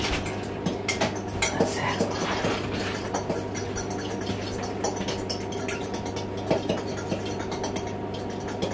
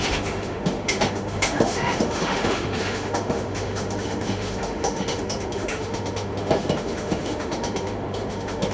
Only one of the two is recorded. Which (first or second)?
first